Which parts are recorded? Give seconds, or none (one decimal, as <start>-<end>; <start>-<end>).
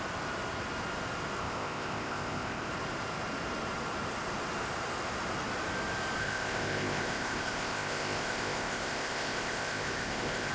0.0-1.4; 2.7-6.2